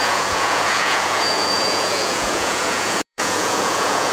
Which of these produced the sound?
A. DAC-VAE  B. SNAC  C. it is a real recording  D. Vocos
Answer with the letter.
D